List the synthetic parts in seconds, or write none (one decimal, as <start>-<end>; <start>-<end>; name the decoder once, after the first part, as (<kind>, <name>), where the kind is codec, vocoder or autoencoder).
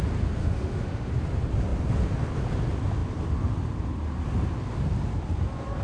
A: 0.4-1.1 (autoencoder, DAC-VAE)